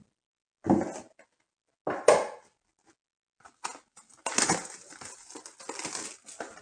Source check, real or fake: real